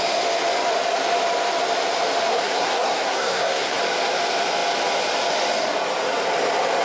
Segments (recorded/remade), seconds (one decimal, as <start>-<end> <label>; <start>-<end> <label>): 0.0-2.3 recorded; 2.3-3.8 remade; 3.8-6.8 recorded